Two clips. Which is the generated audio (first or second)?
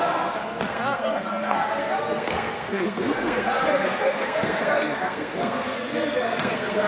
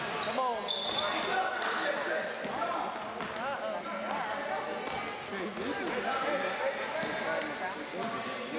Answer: first